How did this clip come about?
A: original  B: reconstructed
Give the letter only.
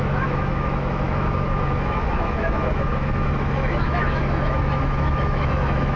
B